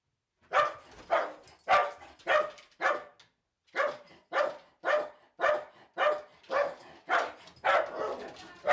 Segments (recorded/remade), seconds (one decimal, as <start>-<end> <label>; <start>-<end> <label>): 0.0-8.7 recorded